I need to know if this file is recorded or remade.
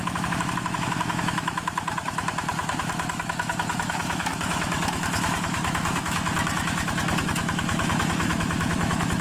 remade